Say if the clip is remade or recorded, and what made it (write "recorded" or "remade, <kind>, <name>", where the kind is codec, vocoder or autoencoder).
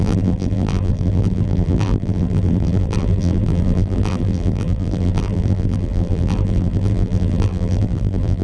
remade, vocoder, BigVGAN v2